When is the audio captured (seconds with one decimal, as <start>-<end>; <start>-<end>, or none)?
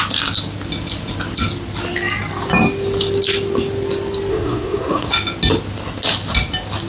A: 0.0-4.3; 5.1-6.9